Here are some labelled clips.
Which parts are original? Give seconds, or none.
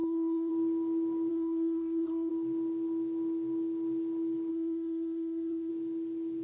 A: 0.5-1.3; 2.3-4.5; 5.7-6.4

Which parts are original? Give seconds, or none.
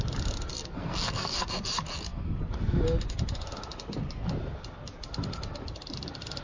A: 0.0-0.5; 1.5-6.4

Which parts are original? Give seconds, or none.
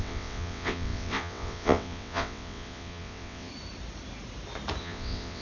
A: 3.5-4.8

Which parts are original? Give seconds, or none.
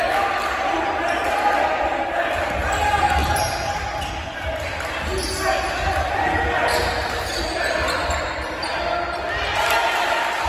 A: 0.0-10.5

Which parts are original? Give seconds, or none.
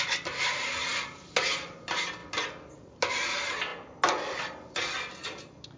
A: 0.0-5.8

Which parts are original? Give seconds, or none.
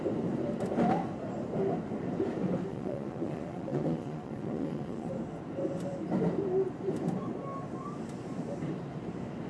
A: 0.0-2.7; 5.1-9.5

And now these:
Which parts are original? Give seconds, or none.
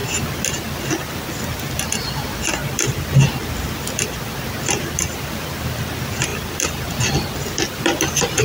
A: 0.0-8.4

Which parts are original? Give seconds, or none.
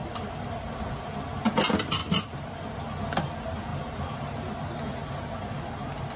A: 0.0-2.0; 2.6-3.7; 4.4-6.2